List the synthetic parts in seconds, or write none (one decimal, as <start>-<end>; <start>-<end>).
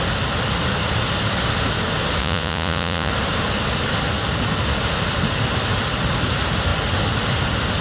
2.2-3.1